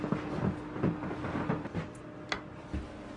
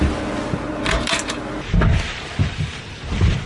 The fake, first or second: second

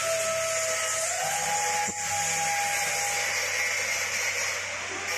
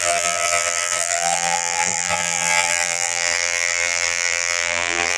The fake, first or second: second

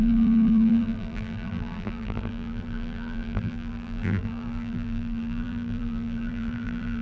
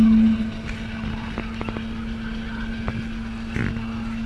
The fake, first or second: first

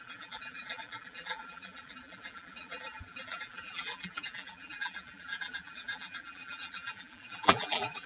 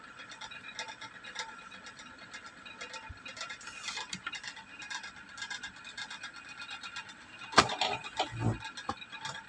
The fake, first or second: first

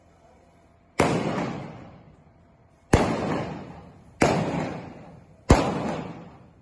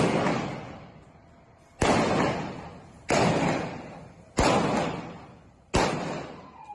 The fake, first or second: first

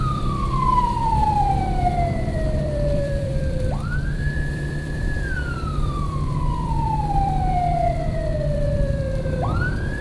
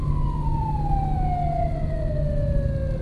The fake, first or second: first